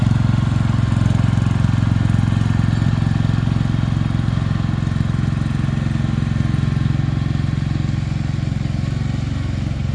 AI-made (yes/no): no